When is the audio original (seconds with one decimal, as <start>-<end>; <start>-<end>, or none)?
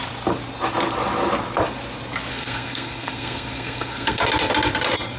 0.0-2.3; 4.2-5.2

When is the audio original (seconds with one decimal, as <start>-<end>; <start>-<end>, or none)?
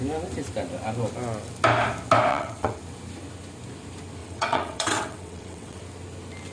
0.0-2.3; 2.8-4.2; 5.8-6.5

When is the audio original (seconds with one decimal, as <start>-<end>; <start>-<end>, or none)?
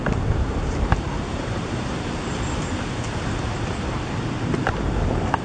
2.3-5.4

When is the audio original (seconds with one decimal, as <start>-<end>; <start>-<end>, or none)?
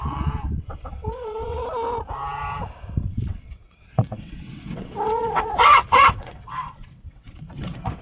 1.6-3.1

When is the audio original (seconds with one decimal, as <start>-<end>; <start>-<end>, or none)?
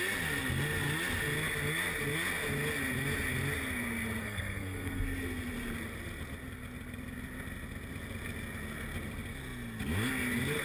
0.0-4.2; 5.0-10.6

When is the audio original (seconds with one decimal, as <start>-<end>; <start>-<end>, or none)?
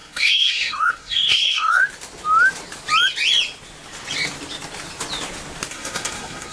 1.8-5.7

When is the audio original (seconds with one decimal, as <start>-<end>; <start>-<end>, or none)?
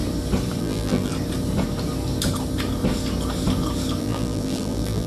0.0-0.6; 1.1-4.0